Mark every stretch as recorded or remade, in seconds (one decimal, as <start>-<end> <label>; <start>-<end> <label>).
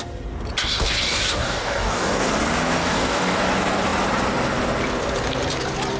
0.0-0.6 recorded; 0.6-2.3 remade; 2.3-2.8 recorded; 2.8-3.4 remade; 3.4-6.0 recorded